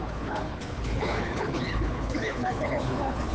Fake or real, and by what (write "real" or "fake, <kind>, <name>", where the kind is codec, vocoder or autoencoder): fake, codec, HILCodec